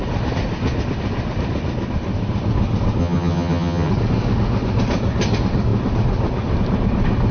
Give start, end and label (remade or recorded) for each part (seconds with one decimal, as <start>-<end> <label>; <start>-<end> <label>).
0.0-3.0 recorded; 3.0-3.9 remade; 3.9-7.3 recorded